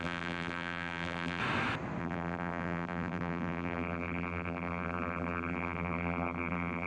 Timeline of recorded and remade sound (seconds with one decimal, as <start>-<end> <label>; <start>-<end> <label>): 0.0-1.4 remade; 1.4-2.0 recorded; 2.0-6.9 remade